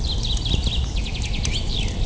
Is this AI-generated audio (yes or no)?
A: no